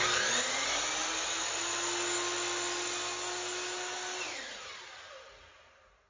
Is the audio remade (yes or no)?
no